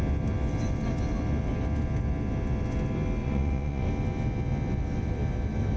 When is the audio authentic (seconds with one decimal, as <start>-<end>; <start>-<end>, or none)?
0.0-3.2; 3.9-5.8